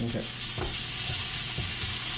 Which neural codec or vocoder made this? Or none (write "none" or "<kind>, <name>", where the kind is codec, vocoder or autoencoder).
none